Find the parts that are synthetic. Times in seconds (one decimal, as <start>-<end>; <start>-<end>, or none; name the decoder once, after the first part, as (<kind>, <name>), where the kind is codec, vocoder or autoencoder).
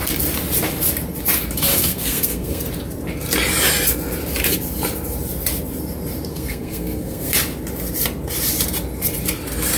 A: 1.7-2.6 (codec, SNAC); 6.3-7.3